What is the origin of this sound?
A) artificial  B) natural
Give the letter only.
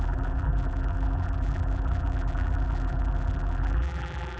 A